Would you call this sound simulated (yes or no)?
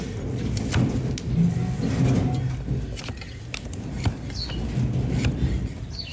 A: no